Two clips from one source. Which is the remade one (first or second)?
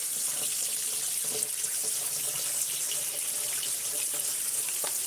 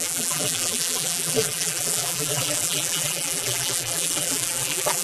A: second